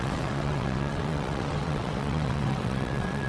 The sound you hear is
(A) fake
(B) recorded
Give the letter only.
A